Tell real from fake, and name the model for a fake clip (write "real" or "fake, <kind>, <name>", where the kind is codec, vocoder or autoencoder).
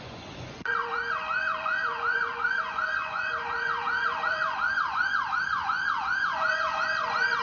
fake, vocoder, Vocos